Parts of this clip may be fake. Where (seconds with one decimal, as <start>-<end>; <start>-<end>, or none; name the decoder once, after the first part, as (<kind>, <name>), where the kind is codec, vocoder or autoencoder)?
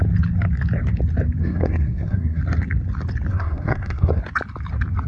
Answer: 1.4-2.4 (codec, SNAC); 3.3-4.2